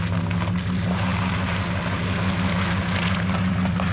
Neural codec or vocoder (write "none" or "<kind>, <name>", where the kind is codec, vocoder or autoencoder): none